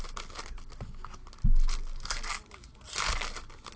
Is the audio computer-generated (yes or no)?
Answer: no